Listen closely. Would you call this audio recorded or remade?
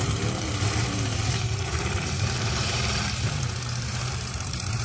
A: remade